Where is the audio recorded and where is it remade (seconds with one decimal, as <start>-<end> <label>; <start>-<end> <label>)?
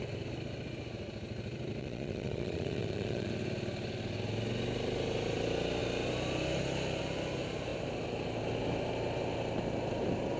0.0-1.8 recorded; 1.8-3.3 remade; 3.3-10.4 recorded